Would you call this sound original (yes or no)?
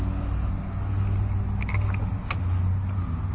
yes